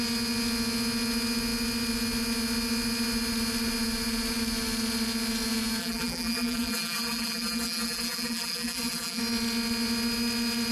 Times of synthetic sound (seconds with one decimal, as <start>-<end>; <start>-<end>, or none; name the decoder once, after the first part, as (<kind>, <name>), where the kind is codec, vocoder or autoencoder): 5.8-9.2 (vocoder, BigVGAN v2)